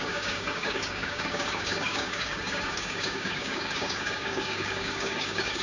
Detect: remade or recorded remade